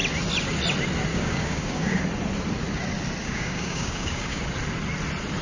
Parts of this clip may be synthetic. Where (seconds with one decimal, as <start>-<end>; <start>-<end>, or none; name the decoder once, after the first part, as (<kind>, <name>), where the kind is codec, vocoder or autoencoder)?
1.1-2.0 (codec, DAC); 3.2-4.4